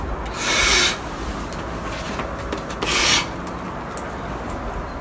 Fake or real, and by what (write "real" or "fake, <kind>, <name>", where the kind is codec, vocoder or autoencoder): real